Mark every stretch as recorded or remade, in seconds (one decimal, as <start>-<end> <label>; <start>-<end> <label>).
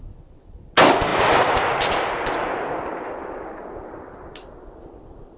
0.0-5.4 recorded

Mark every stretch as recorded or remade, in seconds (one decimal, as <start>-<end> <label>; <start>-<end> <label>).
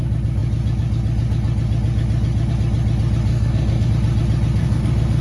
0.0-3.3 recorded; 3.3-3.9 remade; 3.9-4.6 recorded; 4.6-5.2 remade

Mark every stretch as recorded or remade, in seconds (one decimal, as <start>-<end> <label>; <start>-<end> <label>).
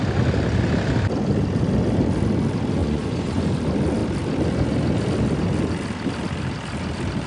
0.0-2.8 recorded; 2.8-3.4 remade; 3.4-7.3 recorded